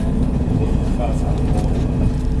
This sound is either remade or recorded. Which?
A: recorded